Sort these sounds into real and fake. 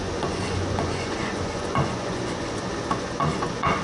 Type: fake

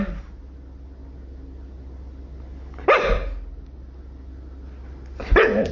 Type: real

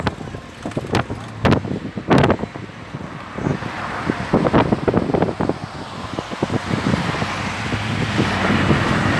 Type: real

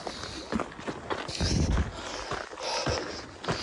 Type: real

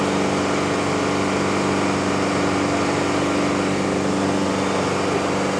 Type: real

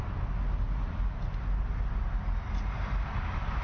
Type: real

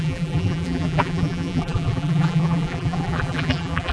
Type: fake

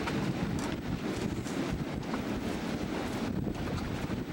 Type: real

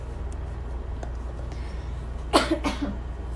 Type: real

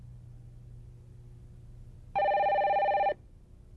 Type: real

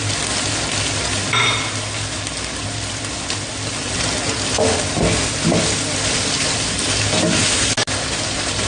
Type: real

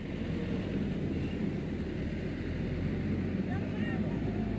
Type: fake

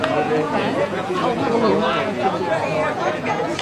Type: fake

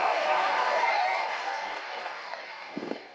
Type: fake